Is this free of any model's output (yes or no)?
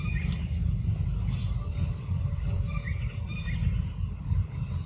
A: yes